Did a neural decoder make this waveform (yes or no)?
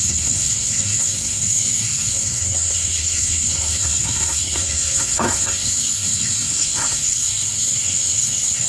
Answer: yes